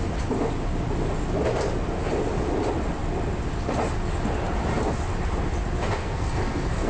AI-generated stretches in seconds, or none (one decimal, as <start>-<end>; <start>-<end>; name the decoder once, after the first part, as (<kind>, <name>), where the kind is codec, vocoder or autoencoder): 6.0-6.9 (codec, SNAC)